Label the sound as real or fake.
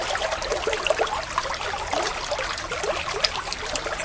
real